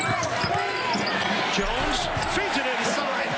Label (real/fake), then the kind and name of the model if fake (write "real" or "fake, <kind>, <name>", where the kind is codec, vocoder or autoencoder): real